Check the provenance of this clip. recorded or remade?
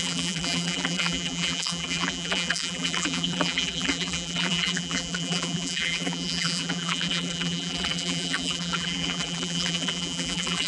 remade